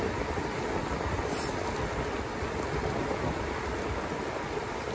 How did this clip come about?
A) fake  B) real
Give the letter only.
B